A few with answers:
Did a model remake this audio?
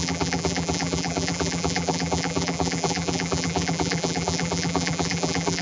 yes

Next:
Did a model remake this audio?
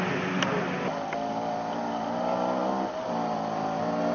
no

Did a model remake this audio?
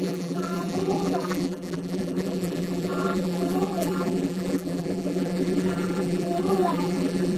yes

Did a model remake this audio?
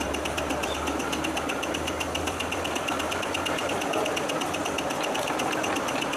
yes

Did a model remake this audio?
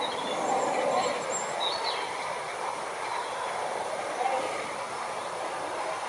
no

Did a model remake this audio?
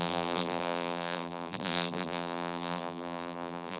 yes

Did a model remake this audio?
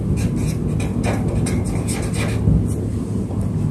no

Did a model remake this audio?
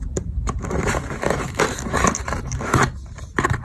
yes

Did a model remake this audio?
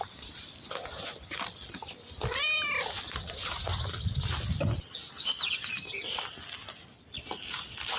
no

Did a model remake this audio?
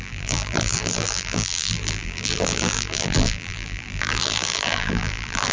yes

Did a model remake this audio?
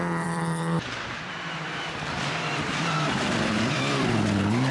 yes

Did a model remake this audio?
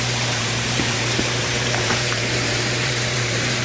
yes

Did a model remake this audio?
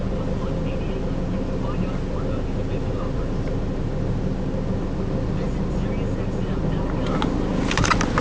no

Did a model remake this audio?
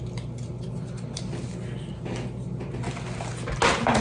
no